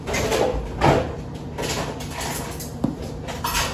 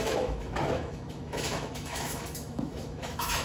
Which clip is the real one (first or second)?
first